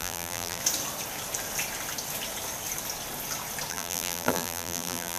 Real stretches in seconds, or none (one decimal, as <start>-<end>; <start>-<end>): 0.6-3.7